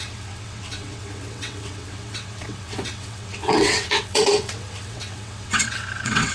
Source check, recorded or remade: remade